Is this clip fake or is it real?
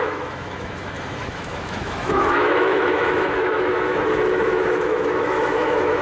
fake